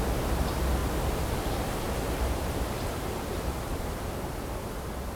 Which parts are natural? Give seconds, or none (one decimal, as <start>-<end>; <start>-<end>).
0.0-0.8; 3.9-5.2